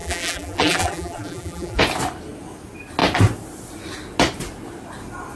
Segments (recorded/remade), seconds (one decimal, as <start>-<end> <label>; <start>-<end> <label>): 0.0-1.8 remade; 1.8-5.4 recorded